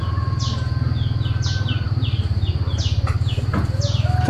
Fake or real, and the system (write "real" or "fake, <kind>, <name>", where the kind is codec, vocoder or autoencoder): real